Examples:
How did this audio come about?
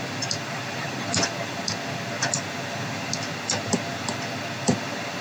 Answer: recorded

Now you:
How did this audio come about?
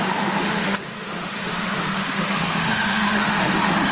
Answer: remade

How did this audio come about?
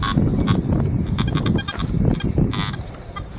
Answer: recorded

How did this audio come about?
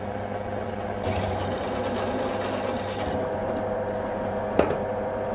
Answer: recorded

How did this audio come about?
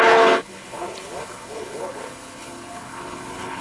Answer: remade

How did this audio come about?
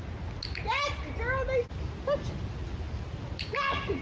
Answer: recorded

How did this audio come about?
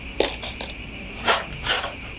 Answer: recorded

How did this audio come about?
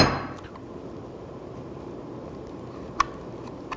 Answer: recorded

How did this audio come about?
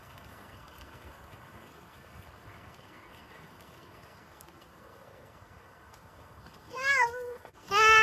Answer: remade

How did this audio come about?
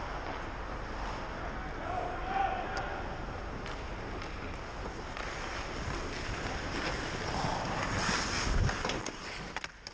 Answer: recorded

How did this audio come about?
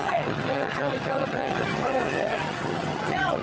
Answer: remade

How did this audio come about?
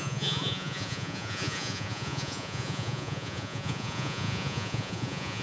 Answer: remade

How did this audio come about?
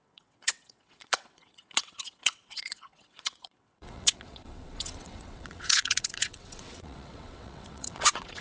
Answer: remade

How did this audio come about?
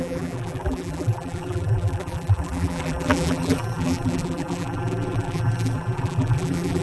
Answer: remade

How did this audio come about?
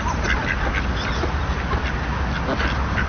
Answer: recorded